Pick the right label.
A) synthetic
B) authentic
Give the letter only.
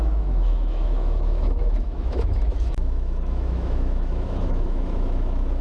A